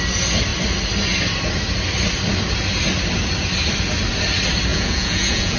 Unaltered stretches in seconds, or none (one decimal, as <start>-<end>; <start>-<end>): 0.0-4.7